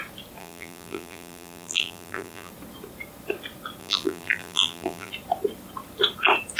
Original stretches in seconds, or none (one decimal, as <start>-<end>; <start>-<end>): 0.0-0.4; 2.5-3.8; 5.1-6.6